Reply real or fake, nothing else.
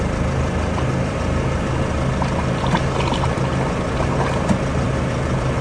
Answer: real